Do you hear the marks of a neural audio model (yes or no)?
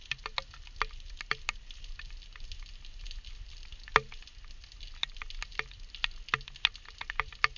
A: no